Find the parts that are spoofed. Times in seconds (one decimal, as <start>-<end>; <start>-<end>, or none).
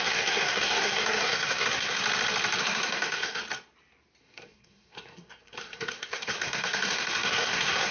0.0-2.0; 2.6-3.4; 4.2-7.9